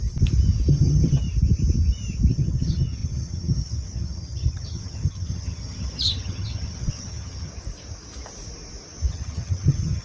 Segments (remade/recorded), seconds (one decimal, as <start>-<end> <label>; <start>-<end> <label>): 0.0-0.7 recorded; 0.7-1.2 remade; 1.2-2.3 recorded; 2.3-7.5 remade; 7.5-9.1 recorded; 9.1-10.0 remade